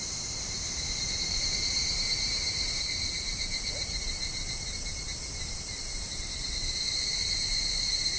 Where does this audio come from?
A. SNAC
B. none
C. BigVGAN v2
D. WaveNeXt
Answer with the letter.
C